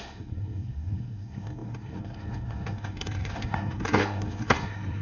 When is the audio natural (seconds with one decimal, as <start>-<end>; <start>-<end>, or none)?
none